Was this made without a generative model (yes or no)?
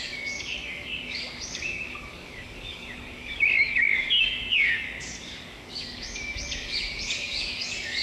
no